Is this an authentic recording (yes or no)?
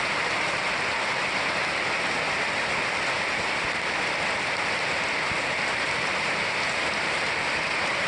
yes